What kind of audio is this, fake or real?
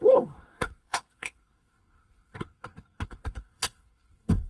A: fake